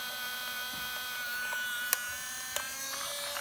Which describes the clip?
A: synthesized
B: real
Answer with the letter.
B